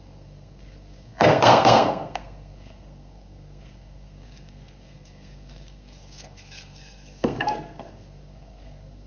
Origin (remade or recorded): remade